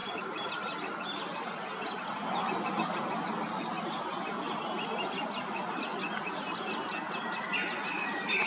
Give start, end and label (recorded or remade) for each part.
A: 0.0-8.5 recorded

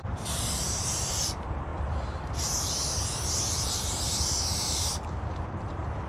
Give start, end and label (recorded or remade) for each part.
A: 0.0-6.1 remade

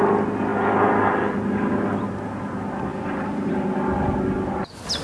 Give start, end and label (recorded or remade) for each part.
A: 0.0-2.9 recorded; 2.9-3.5 remade; 3.5-5.0 recorded

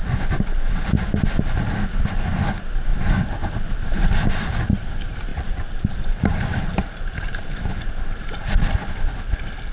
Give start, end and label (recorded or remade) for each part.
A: 0.0-5.3 recorded; 5.3-8.6 remade; 8.6-9.7 recorded

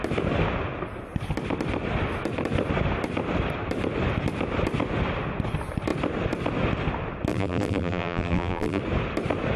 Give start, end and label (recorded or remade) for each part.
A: 0.0-7.3 recorded; 7.3-8.8 remade; 8.8-9.6 recorded

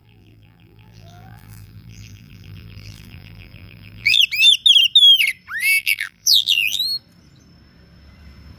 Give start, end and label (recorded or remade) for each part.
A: 0.0-4.2 remade; 4.2-5.8 recorded; 5.8-6.8 remade; 6.8-8.6 recorded